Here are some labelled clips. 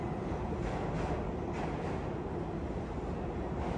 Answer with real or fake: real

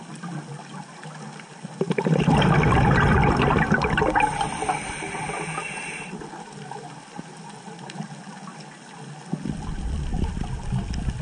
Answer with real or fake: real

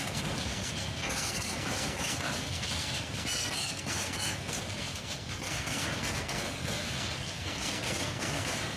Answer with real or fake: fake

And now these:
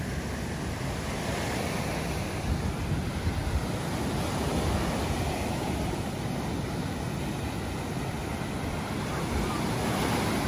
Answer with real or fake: real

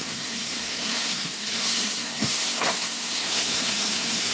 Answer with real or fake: fake